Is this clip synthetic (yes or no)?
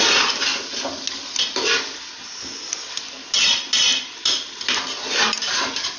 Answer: no